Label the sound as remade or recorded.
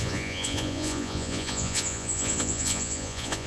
remade